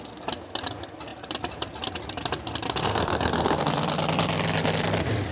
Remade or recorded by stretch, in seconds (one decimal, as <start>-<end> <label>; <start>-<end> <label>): 0.0-2.9 recorded; 2.9-3.6 remade; 3.6-5.3 recorded